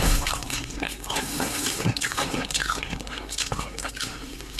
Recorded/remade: remade